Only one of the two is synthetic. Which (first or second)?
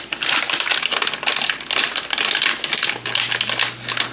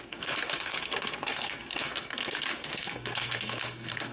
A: second